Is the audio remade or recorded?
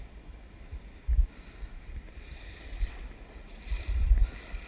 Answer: remade